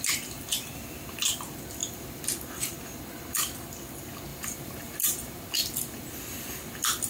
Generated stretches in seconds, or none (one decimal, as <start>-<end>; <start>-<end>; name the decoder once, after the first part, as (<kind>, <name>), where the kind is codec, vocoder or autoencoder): 4.3-5.3 (vocoder, BigVGAN v2)